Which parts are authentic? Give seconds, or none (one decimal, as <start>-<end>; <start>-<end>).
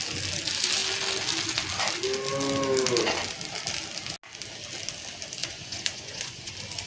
0.0-5.4; 6.5-6.9